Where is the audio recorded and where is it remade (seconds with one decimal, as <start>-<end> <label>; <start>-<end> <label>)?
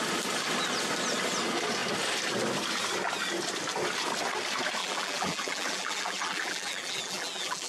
0.0-4.8 recorded; 4.8-7.7 remade